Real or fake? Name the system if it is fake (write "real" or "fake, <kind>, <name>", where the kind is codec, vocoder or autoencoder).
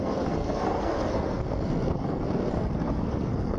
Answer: fake, codec, SNAC